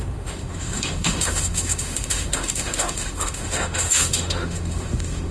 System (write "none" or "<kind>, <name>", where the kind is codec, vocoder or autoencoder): autoencoder, DAC-VAE